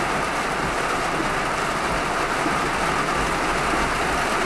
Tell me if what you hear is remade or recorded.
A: recorded